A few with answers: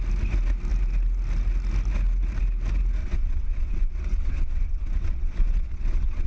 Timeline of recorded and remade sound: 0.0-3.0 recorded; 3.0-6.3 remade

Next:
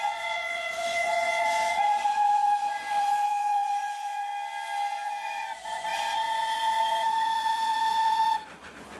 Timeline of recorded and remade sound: 0.0-4.3 remade; 4.3-4.9 recorded; 4.9-9.0 remade

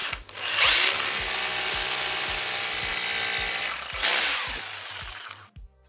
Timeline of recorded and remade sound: 0.0-0.5 remade; 0.5-5.9 recorded

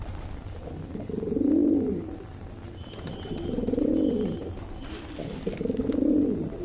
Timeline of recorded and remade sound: 0.0-6.6 recorded